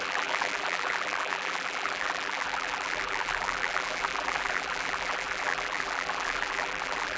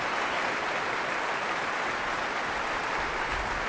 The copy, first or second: first